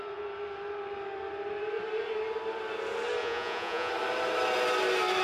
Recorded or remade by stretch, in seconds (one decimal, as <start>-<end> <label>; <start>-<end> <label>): 0.0-3.2 recorded; 3.2-3.9 remade; 3.9-5.2 recorded